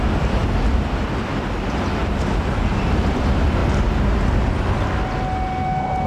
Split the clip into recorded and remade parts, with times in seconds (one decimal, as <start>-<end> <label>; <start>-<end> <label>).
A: 0.0-0.4 recorded; 0.4-1.2 remade; 1.2-2.0 recorded; 2.0-2.5 remade; 2.5-6.1 recorded